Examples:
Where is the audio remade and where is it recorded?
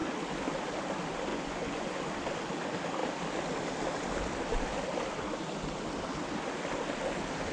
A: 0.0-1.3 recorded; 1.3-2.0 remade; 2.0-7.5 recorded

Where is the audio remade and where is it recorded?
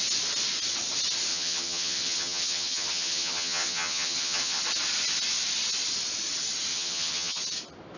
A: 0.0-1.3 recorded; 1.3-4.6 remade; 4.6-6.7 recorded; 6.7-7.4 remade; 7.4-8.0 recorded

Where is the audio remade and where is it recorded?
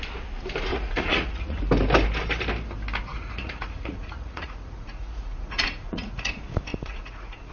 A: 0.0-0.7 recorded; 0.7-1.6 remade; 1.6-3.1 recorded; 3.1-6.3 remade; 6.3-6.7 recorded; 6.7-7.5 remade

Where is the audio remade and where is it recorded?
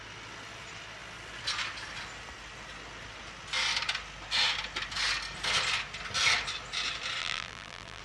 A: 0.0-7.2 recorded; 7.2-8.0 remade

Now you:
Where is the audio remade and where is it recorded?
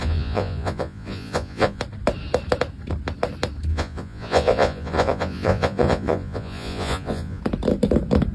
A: 0.0-1.8 remade; 1.8-3.7 recorded; 3.7-7.4 remade; 7.4-8.3 recorded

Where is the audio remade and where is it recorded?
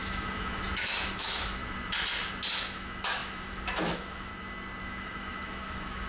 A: 0.0-1.6 remade; 1.6-2.5 recorded; 2.5-4.3 remade; 4.3-4.8 recorded; 4.8-6.1 remade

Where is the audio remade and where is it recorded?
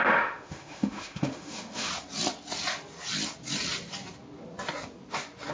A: 0.0-1.9 remade; 1.9-5.5 recorded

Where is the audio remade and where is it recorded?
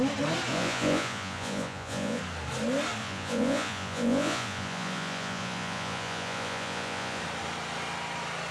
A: 0.0-0.5 recorded; 0.5-2.2 remade; 2.2-3.0 recorded; 3.0-7.2 remade; 7.2-8.5 recorded